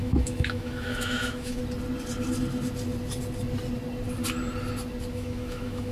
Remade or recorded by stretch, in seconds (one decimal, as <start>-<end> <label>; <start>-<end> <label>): 0.0-1.6 remade; 1.6-5.1 recorded; 5.1-5.9 remade